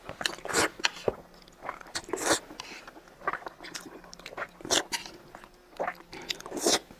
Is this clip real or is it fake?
real